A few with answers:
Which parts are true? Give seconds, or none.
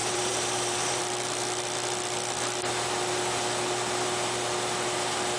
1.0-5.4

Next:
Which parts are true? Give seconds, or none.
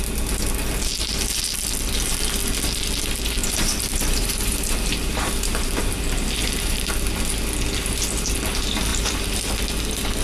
0.0-3.4; 6.9-8.9; 9.5-10.2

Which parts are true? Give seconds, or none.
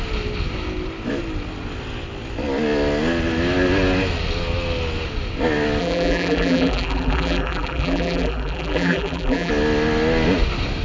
0.0-5.8; 9.5-10.8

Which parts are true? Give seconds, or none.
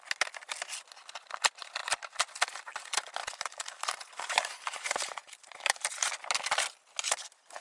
0.0-3.2; 6.1-7.6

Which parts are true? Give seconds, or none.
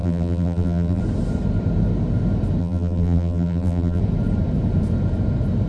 1.0-2.6; 4.0-5.7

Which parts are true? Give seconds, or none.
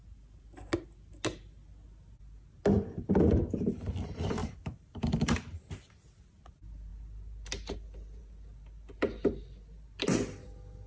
0.0-4.4; 5.7-10.9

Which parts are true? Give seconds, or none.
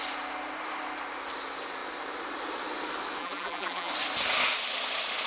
0.0-3.2; 3.9-5.3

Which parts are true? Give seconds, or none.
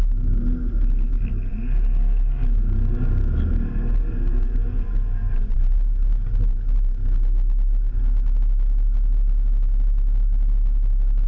0.0-5.2; 5.8-11.3